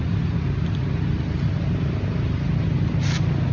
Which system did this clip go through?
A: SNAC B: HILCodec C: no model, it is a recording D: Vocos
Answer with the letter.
C